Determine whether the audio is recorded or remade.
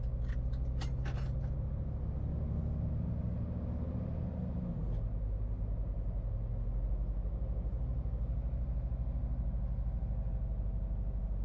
recorded